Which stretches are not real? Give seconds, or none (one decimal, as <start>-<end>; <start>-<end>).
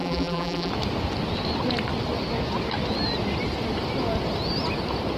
0.0-0.7